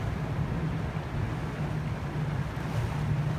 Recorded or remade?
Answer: recorded